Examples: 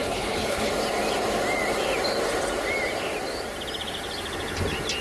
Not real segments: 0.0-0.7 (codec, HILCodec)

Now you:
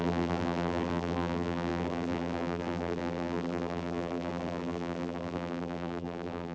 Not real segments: 0.0-6.5 (vocoder, BigVGAN v2)

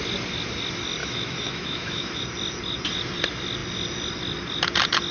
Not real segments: 1.0-2.2 (autoencoder, DAC-VAE)

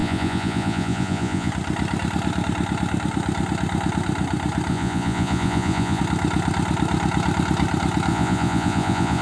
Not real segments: 0.0-1.5 (vocoder, Vocos); 4.7-6.0; 8.1-9.2